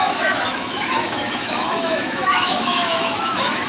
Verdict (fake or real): fake